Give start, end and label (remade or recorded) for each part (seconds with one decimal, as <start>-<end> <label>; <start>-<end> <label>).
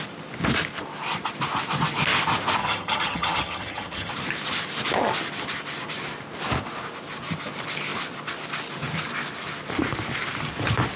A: 0.0-2.6 recorded; 2.6-4.1 remade; 4.1-11.0 recorded